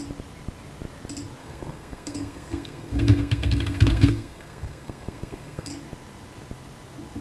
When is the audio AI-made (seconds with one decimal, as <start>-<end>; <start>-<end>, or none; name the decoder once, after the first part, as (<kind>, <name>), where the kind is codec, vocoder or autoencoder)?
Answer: 1.4-5.7 (codec, SNAC)